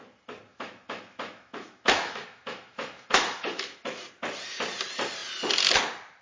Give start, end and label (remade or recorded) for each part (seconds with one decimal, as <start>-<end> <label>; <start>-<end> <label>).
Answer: 0.0-0.5 recorded; 0.5-4.0 remade; 4.0-6.2 recorded